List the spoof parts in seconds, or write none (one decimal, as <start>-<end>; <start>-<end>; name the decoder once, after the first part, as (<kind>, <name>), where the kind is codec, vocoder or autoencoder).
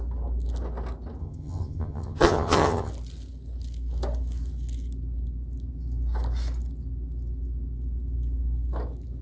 1.2-2.9 (vocoder, HiFi-GAN)